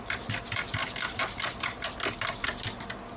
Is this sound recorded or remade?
recorded